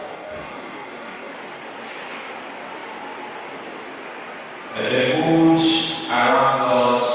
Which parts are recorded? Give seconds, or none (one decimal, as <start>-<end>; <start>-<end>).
1.3-7.1